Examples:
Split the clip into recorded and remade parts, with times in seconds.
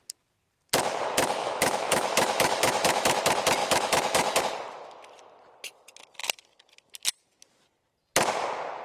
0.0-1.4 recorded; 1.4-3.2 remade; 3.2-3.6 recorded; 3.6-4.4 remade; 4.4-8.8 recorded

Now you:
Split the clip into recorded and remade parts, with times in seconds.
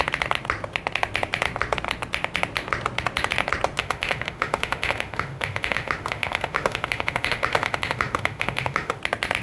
0.0-3.8 recorded; 3.8-9.0 remade; 9.0-9.4 recorded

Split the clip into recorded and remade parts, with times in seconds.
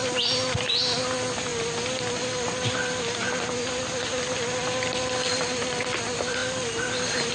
0.0-7.3 recorded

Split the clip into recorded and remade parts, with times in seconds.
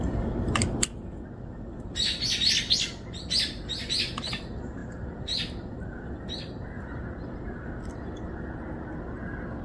0.0-9.6 recorded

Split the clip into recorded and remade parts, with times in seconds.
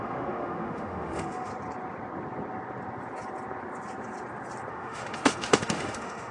0.0-1.5 remade; 1.5-4.7 recorded; 4.7-6.3 remade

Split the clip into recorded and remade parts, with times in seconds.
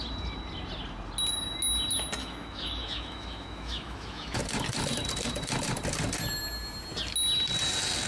0.0-2.2 recorded; 2.2-4.4 remade; 4.4-8.1 recorded